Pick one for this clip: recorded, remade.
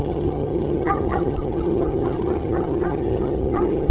remade